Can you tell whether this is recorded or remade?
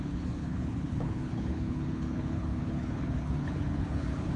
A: remade